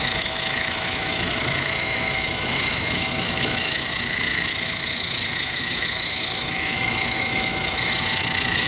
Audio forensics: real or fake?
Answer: fake